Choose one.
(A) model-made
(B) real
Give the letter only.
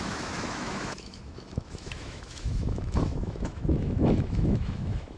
A